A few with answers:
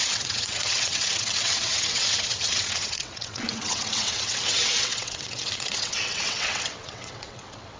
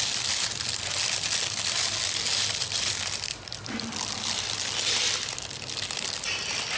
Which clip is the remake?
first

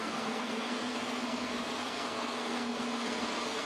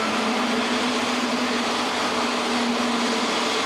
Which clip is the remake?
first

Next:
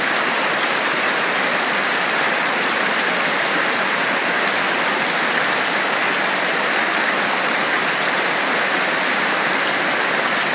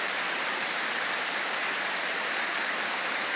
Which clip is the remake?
second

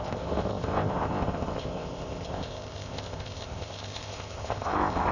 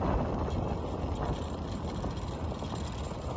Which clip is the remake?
first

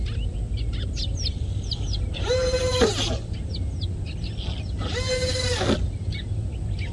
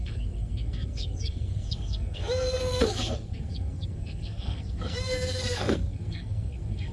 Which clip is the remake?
second